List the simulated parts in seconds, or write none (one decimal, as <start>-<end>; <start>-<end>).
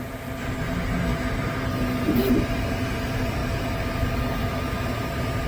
none